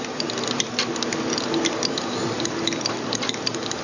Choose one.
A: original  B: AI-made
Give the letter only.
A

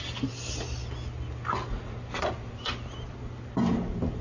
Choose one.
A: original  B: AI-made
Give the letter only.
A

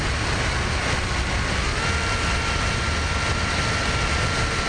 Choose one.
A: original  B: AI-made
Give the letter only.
A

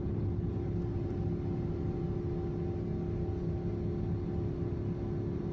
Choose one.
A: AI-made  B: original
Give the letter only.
B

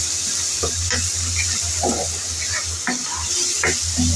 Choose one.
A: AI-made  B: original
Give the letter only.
B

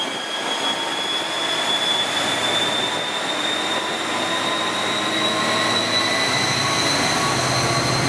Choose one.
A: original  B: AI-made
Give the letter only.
A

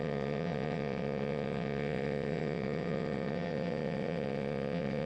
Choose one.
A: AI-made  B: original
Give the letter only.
A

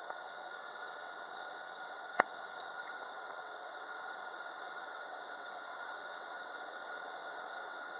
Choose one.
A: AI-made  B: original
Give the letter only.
A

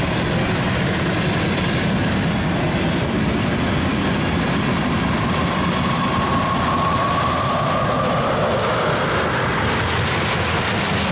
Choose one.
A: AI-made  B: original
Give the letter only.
B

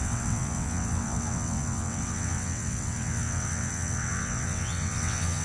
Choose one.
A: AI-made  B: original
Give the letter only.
A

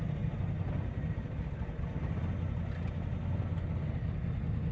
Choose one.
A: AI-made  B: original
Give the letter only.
B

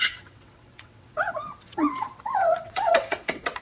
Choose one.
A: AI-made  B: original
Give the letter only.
A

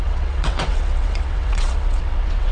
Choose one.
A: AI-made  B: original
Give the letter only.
A